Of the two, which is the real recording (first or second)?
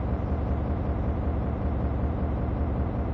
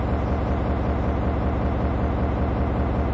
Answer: second